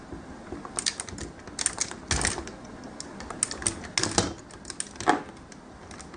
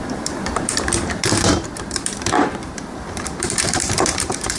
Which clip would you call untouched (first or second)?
first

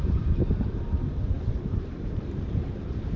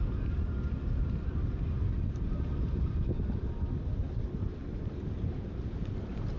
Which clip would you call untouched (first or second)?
second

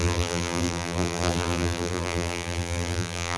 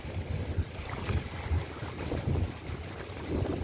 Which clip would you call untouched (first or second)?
second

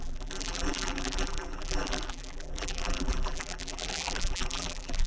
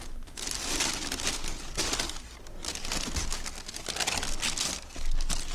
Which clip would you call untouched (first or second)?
second